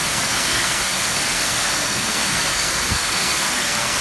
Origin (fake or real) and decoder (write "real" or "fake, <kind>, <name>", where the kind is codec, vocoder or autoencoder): fake, codec, SNAC